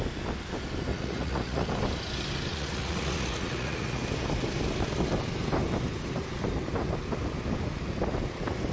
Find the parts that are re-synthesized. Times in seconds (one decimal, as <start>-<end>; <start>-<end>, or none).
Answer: 0.9-1.6; 2.5-4.0